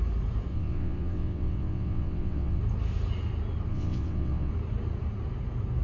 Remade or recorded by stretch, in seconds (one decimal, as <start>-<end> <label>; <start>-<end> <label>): 0.0-0.5 recorded; 0.5-2.6 remade; 2.6-3.7 recorded; 3.7-4.5 remade; 4.5-5.8 recorded